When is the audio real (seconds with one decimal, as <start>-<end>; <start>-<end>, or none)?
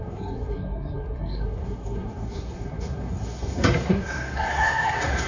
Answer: none